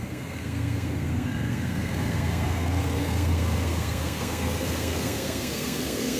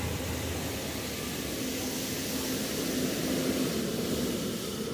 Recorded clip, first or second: second